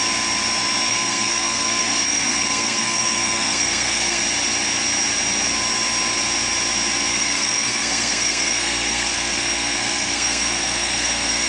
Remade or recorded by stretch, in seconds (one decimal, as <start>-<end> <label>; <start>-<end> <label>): 0.0-0.9 recorded; 0.9-4.2 remade; 4.2-7.1 recorded; 7.1-11.5 remade